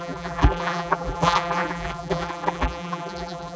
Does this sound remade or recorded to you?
remade